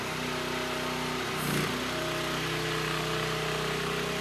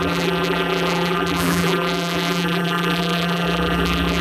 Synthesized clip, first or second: second